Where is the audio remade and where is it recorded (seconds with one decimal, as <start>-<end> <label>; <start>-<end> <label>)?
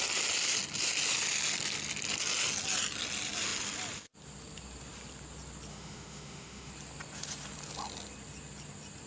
0.0-5.7 recorded; 5.7-6.7 remade; 6.7-9.1 recorded